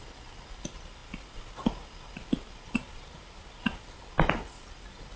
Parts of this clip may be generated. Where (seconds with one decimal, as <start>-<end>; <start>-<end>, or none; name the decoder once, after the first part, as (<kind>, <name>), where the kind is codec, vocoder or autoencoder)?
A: none